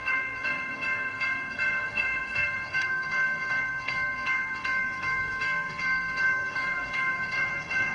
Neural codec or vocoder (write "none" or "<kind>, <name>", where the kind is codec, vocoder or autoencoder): codec, SNAC